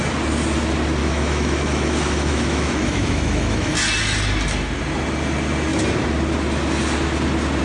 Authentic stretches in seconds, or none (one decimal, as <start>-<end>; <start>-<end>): 0.0-1.0; 3.7-7.6